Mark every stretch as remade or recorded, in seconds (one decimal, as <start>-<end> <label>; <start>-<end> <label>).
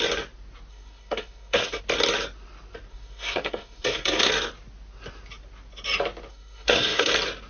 0.0-0.7 recorded; 0.7-1.8 remade; 1.8-2.9 recorded; 2.9-4.3 remade; 4.3-6.3 recorded; 6.3-7.1 remade; 7.1-7.5 recorded